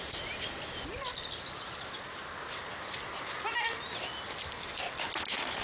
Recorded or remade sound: recorded